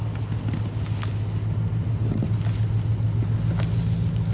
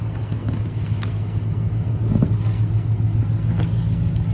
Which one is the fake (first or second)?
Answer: second